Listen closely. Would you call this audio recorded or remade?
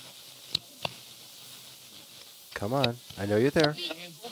recorded